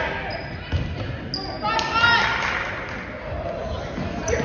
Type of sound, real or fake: real